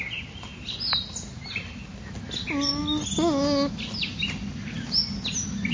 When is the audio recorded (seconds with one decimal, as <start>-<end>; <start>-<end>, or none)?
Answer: 0.0-5.7